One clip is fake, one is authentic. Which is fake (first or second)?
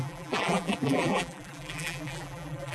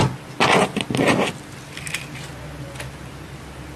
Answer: first